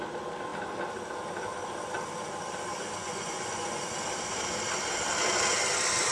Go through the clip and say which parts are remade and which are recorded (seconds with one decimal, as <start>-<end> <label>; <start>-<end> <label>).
0.0-3.0 recorded; 3.0-3.8 remade; 3.8-6.1 recorded